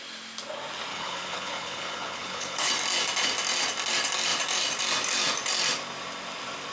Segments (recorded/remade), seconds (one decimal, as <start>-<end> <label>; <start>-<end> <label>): 0.0-0.9 recorded; 0.9-2.7 remade; 2.7-6.7 recorded